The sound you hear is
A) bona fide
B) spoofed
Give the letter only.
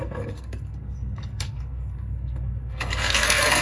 B